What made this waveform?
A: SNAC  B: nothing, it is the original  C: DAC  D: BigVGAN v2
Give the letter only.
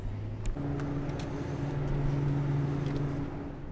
B